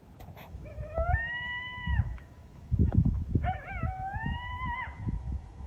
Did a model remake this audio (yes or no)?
yes